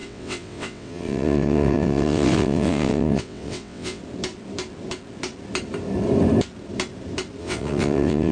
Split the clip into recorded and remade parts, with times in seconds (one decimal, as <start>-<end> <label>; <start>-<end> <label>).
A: 0.0-4.0 remade; 4.0-7.4 recorded; 7.4-8.3 remade